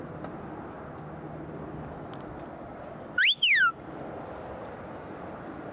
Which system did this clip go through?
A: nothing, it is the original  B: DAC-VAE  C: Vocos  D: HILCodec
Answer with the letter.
A